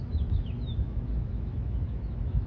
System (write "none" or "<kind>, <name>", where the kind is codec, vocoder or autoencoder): autoencoder, DAC-VAE